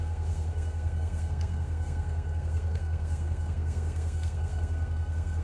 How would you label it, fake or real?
fake